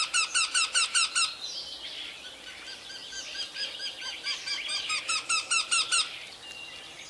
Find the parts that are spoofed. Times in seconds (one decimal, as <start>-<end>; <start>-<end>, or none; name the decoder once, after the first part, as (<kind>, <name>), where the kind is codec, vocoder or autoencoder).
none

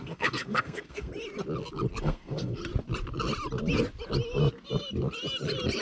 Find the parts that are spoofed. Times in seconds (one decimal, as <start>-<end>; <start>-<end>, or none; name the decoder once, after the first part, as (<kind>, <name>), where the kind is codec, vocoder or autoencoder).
0.0-1.1 (codec, SNAC); 2.0-2.6

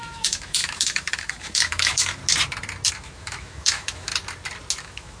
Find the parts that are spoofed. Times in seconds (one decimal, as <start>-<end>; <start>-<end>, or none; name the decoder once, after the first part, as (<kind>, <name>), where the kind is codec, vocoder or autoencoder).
0.0-2.2 (autoencoder, DAC-VAE); 2.9-4.1; 4.8-5.2